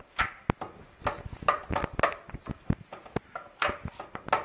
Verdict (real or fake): real